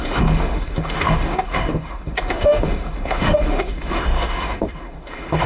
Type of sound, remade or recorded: remade